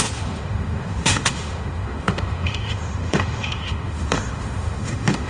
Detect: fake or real fake